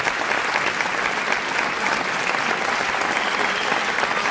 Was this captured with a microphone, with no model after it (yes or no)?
yes